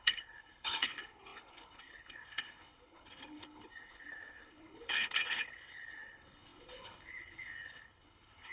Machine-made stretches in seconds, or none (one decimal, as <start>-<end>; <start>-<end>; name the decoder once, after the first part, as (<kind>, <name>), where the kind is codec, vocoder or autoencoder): 0.0-8.5 (codec, HILCodec)